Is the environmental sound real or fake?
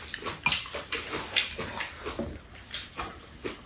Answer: real